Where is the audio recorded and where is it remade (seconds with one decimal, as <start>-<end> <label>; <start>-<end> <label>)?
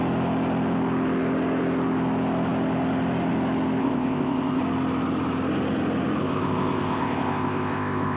0.0-3.8 recorded; 3.8-4.6 remade; 4.6-6.2 recorded; 6.2-8.2 remade